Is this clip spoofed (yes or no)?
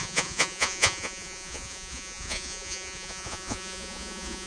yes